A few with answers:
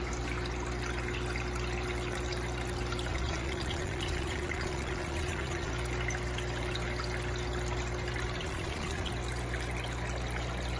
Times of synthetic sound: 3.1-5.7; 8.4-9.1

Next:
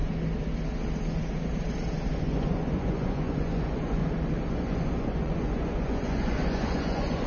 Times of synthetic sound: 2.2-4.0; 4.5-7.3

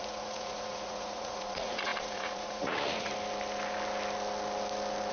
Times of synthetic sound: 0.0-3.1

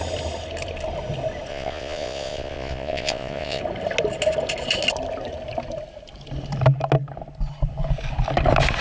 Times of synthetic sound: 1.5-3.6